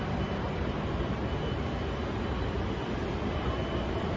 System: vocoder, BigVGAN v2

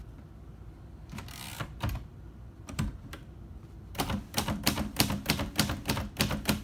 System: vocoder, BigVGAN v2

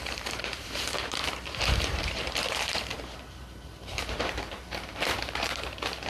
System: vocoder, BigVGAN v2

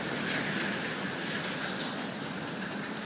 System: none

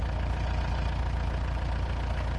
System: none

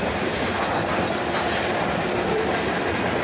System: vocoder, BigVGAN v2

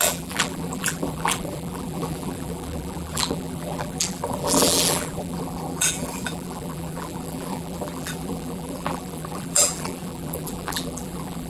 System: vocoder, BigVGAN v2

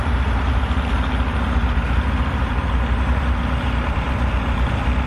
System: vocoder, BigVGAN v2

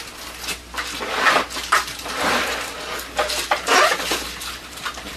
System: vocoder, BigVGAN v2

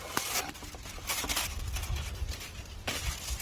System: none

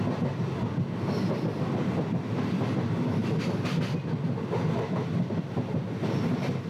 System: none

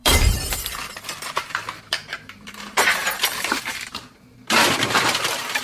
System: vocoder, BigVGAN v2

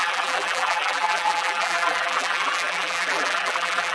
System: vocoder, BigVGAN v2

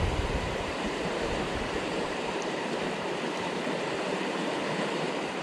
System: vocoder, BigVGAN v2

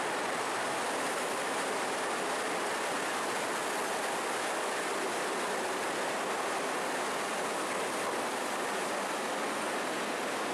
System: none